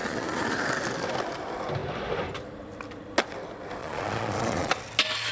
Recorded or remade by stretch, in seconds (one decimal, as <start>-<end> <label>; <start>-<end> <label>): 0.0-0.6 remade; 0.6-3.8 recorded; 3.8-4.7 remade; 4.7-5.3 recorded